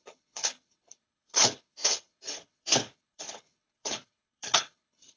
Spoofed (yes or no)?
yes